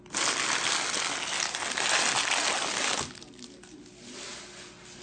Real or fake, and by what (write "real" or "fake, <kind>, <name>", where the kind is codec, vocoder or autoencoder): real